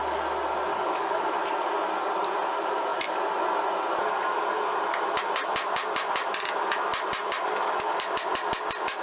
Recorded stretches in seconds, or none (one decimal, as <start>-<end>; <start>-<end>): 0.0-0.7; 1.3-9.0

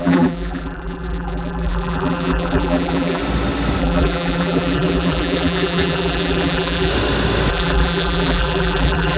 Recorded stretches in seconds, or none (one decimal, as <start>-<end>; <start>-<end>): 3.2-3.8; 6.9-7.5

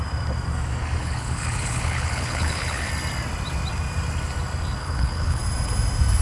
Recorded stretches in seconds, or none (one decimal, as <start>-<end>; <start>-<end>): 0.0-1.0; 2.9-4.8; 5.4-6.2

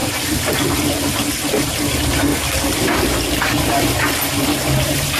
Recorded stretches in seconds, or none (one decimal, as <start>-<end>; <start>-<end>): 0.0-2.3; 4.1-5.2